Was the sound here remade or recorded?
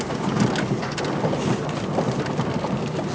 recorded